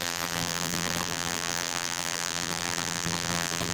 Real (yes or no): no